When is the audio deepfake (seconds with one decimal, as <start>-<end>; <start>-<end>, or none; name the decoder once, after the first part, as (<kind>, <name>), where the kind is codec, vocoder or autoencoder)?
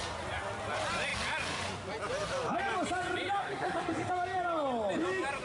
3.4-4.1 (codec, SNAC)